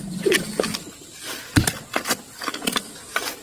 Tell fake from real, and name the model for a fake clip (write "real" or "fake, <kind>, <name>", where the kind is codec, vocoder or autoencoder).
real